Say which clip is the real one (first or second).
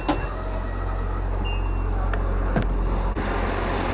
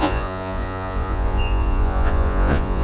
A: first